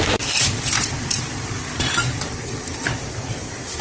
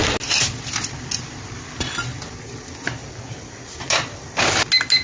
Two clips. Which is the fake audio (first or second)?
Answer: first